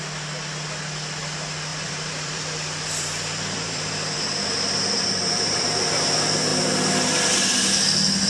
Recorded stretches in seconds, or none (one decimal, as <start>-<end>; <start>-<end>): 0.0-1.7; 5.6-8.3